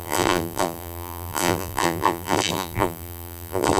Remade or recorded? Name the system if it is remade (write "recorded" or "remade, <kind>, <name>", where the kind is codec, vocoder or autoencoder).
remade, vocoder, BigVGAN v2